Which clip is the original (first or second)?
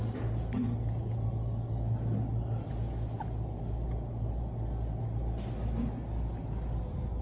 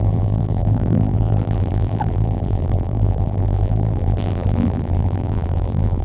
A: first